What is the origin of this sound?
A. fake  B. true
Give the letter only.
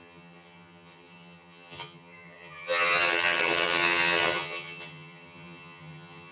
A